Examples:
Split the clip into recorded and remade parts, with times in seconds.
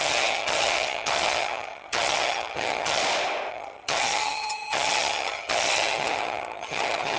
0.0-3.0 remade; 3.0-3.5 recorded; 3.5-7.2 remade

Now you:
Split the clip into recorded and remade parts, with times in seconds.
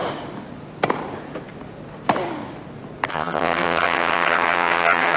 0.0-3.1 recorded; 3.1-5.2 remade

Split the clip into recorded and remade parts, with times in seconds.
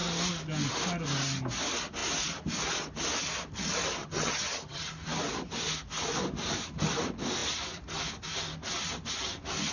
0.0-4.0 recorded; 4.0-4.9 remade; 4.9-9.7 recorded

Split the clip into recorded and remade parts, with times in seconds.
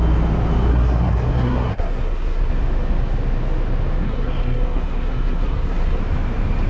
0.0-0.7 recorded; 0.7-2.5 remade; 2.5-4.0 recorded; 4.0-6.0 remade; 6.0-6.7 recorded